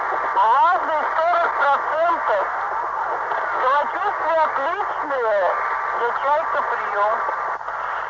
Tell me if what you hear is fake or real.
real